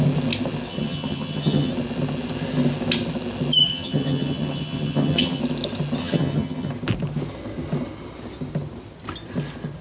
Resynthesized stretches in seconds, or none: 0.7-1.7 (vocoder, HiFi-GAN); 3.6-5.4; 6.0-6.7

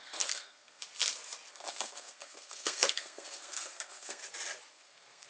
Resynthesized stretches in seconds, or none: 0.0-0.8 (codec, SNAC); 1.5-4.2; 4.7-5.3